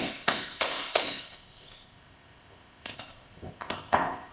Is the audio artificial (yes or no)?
yes